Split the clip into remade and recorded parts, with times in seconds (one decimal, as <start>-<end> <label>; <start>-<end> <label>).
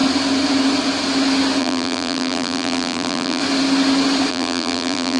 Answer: 0.0-1.6 recorded; 1.6-3.4 remade; 3.4-4.3 recorded; 4.3-5.2 remade